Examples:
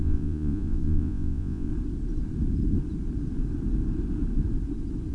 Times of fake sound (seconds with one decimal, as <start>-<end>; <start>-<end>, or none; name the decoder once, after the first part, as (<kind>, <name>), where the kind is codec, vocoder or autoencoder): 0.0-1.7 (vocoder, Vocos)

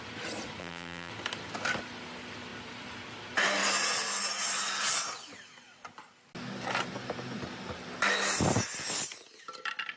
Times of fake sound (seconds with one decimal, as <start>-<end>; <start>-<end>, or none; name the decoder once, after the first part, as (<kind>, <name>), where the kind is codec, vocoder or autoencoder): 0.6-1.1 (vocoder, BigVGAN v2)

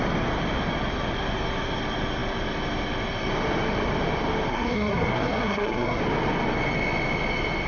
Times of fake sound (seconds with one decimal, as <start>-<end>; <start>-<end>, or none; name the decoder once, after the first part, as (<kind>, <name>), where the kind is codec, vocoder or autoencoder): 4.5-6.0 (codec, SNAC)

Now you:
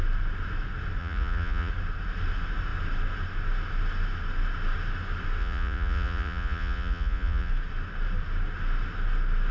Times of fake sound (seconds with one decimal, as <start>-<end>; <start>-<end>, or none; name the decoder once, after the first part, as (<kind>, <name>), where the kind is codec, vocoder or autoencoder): 1.0-1.7 (vocoder, Vocos); 5.4-7.5

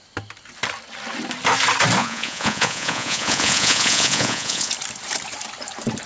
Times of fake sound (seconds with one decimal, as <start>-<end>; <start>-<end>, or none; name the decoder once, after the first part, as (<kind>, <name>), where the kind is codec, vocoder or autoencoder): 2.0-4.7 (vocoder, Vocos)

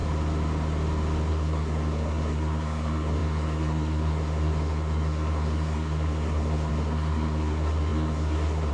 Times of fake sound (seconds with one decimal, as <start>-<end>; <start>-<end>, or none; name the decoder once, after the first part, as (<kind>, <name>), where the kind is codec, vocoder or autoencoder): 1.3-8.7 (codec, SNAC)

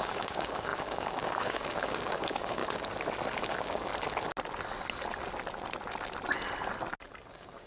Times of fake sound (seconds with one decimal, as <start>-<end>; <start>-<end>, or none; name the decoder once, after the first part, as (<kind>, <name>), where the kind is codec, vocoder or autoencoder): 0.0-2.6 (codec, DAC); 3.4-3.9; 7.3-7.7

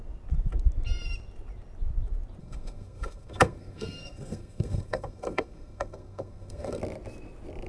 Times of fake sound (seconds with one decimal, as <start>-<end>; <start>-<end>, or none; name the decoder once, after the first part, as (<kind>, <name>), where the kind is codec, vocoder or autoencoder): 2.4-6.8 (codec, SNAC)